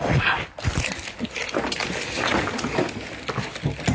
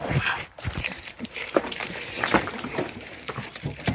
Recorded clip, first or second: first